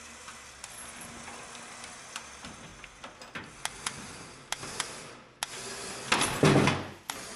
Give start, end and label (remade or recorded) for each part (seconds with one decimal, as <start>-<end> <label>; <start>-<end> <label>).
0.0-7.4 recorded